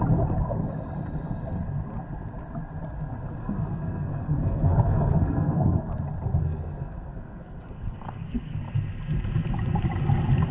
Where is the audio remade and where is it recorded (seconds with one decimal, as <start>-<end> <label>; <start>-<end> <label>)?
0.0-3.4 recorded; 3.4-5.9 remade; 5.9-6.4 recorded; 6.4-8.6 remade; 8.6-10.5 recorded